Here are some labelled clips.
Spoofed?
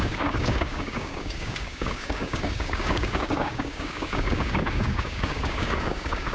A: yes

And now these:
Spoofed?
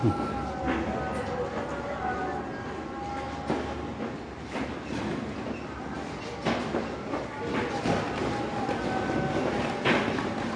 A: no